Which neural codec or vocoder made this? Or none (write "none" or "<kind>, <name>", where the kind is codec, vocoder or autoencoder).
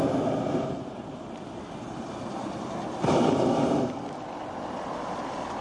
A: none